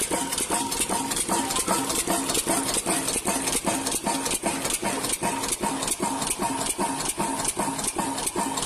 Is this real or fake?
real